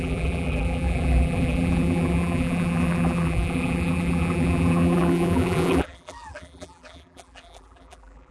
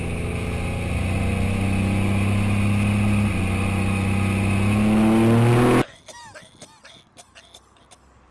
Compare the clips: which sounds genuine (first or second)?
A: second